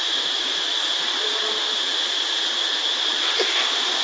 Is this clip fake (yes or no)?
no